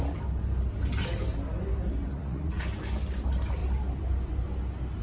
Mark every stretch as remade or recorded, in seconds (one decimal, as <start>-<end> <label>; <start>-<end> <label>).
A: 0.0-2.1 recorded; 2.1-2.6 remade; 2.6-5.0 recorded